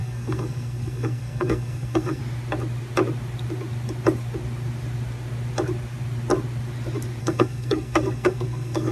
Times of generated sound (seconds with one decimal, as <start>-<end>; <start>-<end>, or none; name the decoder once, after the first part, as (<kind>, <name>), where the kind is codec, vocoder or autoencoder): 0.0-2.2 (codec, SNAC); 7.2-8.9